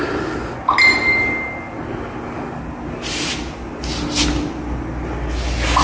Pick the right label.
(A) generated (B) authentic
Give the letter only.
B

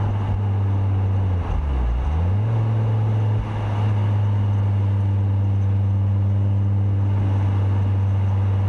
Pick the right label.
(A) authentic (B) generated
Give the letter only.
A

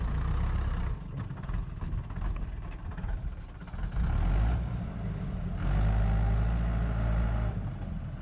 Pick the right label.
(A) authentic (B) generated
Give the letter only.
A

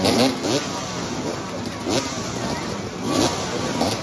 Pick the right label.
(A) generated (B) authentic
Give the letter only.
B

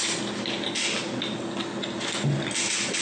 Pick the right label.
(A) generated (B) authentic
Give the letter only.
B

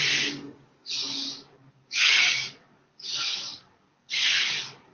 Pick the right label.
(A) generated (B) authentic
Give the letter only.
A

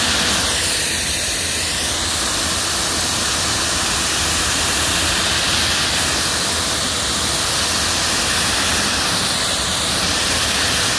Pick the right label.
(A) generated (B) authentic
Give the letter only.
B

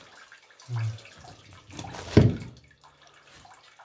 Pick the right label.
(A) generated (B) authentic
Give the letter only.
B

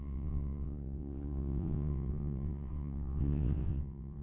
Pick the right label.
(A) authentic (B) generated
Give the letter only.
B